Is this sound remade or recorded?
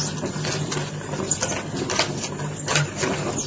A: recorded